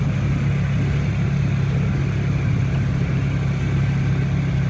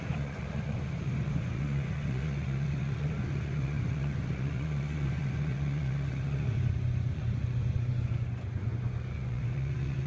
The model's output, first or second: second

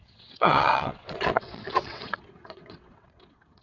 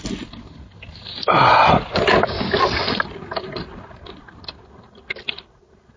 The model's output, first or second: first